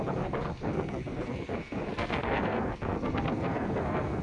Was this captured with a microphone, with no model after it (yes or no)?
no